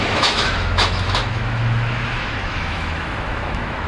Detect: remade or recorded remade